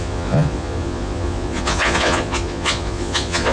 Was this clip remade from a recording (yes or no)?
yes